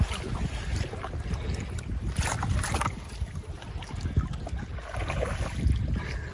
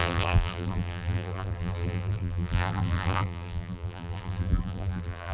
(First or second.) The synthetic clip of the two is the second